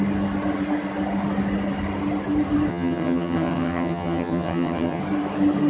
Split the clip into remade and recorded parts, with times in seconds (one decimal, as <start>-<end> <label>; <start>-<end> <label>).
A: 0.0-2.7 recorded; 2.7-5.0 remade; 5.0-5.7 recorded